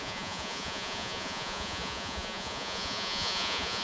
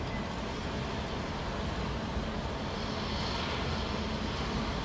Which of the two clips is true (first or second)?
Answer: second